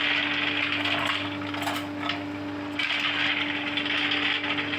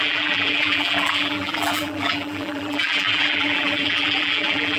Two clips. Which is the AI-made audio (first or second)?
second